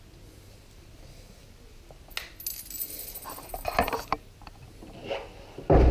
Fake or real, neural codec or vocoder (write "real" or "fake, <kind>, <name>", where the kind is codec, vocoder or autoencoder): real